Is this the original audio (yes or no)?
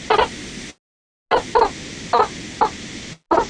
yes